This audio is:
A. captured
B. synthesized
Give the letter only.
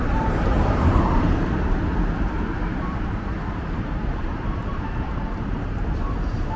B